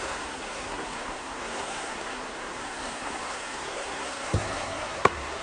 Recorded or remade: remade